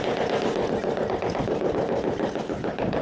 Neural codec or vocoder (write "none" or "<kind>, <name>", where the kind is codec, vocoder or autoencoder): none